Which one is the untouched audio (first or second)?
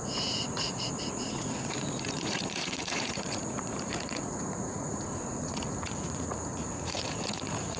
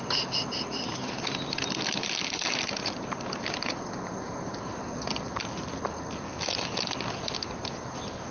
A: second